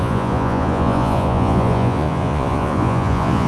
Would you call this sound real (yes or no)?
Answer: no